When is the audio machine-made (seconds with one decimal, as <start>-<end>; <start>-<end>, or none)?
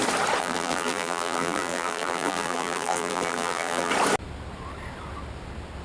0.4-3.9